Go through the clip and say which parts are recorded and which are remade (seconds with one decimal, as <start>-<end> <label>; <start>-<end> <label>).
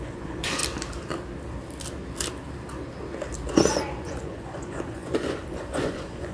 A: 0.0-0.6 remade; 0.6-3.7 recorded; 3.7-6.3 remade